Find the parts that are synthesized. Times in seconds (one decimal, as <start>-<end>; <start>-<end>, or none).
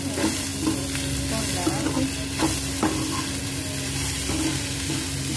0.0-0.5; 3.4-5.4